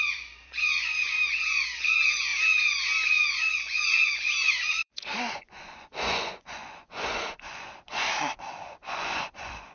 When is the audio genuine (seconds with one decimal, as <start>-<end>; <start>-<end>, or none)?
2.3-3.1